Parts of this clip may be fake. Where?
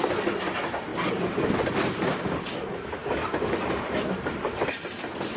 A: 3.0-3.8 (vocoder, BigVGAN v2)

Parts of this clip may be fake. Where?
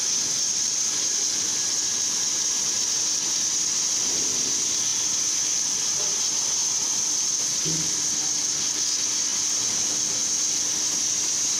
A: 9.3-10.3 (vocoder, BigVGAN v2)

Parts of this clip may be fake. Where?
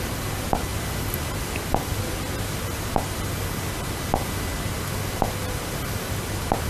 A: none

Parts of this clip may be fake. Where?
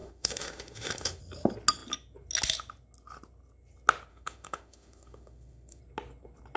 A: 0.0-1.2 (autoencoder, DAC-VAE); 4.1-5.8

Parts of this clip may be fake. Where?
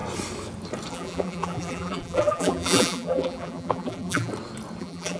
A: 0.9-4.3 (vocoder, BigVGAN v2); 4.8-5.2